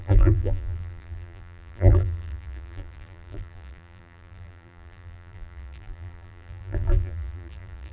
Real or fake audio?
fake